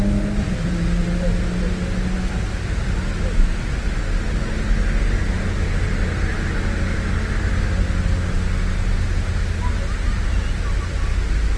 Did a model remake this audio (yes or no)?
no